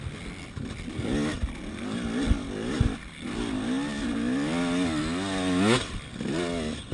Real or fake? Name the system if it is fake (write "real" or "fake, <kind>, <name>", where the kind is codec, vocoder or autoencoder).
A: real